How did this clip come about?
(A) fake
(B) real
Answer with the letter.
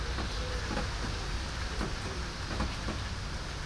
B